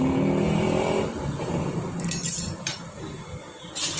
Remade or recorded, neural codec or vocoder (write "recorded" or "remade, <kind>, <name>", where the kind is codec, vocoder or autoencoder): recorded